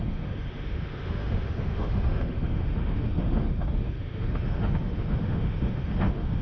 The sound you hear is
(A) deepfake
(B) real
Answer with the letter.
A